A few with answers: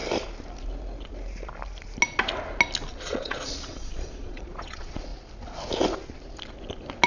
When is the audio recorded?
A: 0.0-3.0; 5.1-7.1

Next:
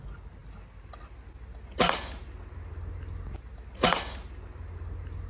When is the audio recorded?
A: 0.0-5.3

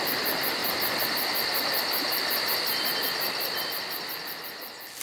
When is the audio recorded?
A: 0.0-5.0